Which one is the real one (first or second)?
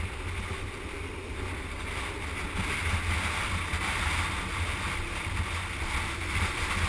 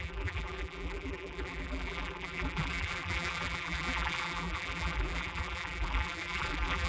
first